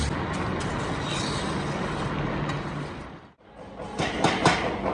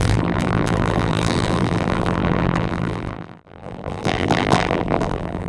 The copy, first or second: second